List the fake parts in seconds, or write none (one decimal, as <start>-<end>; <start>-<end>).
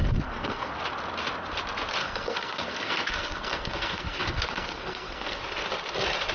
0.0-0.7; 2.0-5.4